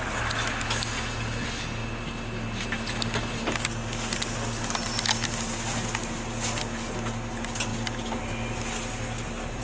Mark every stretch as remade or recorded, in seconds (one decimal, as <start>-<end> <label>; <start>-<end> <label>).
0.0-9.6 recorded